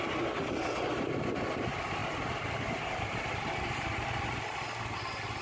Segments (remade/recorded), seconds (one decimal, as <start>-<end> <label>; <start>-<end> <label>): 0.0-5.4 recorded